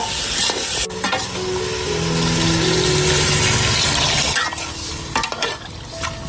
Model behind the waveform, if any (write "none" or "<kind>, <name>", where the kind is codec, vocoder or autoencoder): none